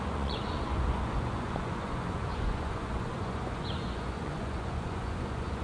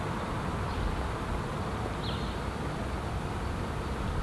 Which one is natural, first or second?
second